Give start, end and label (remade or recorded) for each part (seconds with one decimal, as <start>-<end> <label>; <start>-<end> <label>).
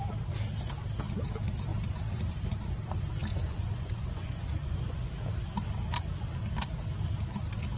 0.0-3.3 recorded; 3.3-5.1 remade; 5.1-7.8 recorded